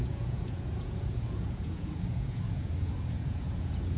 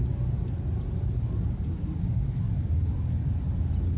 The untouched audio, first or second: second